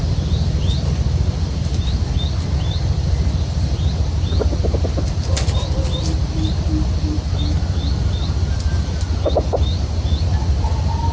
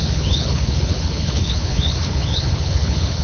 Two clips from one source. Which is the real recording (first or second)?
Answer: first